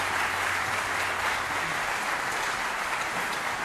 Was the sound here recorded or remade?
recorded